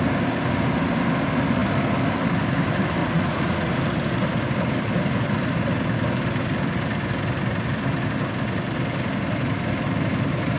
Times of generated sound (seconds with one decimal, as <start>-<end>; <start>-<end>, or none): 3.0-3.7